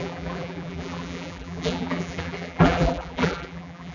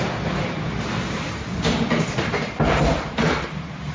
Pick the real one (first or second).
second